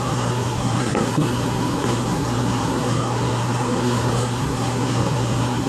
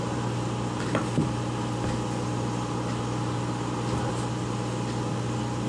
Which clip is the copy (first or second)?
first